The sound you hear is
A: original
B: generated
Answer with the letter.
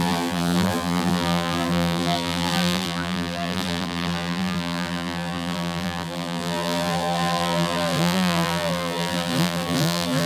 B